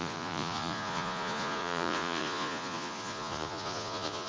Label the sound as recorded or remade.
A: remade